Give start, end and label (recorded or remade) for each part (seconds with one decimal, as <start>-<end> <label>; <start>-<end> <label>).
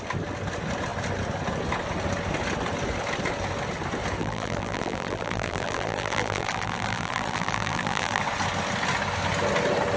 0.0-4.2 recorded; 4.2-8.2 remade; 8.2-10.0 recorded